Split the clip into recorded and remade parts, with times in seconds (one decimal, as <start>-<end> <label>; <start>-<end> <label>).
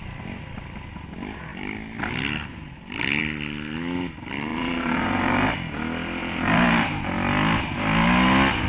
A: 0.0-4.5 recorded; 4.5-5.5 remade; 5.5-6.2 recorded; 6.2-7.1 remade; 7.1-8.7 recorded